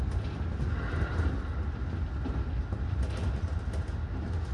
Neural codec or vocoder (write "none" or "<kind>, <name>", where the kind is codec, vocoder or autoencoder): none